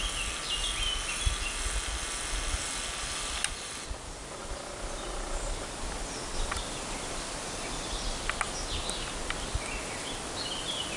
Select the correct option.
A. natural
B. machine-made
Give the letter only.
A